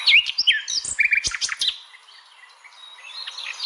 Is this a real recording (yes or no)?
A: yes